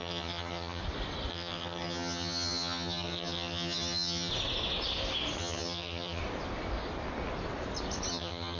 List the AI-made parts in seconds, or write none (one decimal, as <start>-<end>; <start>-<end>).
0.0-0.8; 1.3-4.3; 5.4-6.2; 8.1-8.6